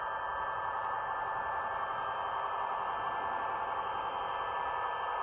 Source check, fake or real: real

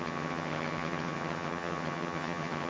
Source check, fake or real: fake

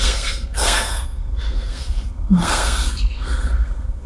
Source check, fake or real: fake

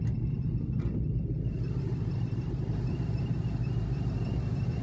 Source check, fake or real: fake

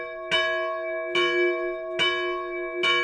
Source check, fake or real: real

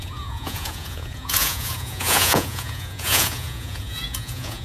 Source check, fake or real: fake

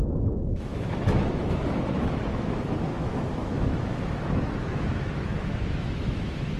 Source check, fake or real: fake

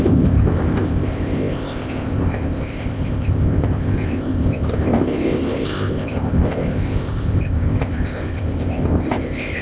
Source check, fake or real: fake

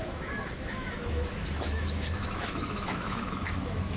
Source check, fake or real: fake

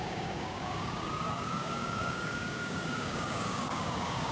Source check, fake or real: fake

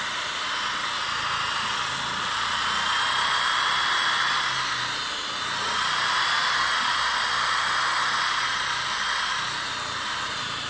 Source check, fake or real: real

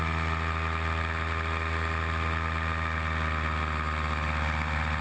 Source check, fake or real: real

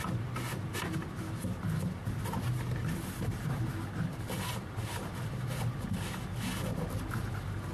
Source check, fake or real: real